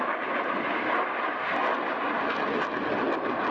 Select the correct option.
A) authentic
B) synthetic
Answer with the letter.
A